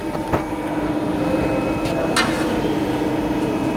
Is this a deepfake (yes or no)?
no